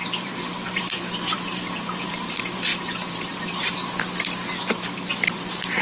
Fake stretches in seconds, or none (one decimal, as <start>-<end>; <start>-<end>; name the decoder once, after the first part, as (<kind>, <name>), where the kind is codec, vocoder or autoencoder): 0.0-3.8 (vocoder, BigVGAN v2); 5.3-5.8